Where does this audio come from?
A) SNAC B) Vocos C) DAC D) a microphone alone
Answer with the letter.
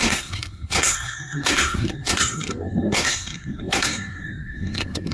A